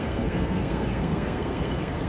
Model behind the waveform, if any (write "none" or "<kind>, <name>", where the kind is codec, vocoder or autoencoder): codec, SNAC